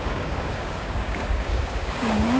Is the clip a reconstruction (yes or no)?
yes